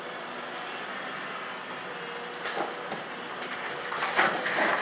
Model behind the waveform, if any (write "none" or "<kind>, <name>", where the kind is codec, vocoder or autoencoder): none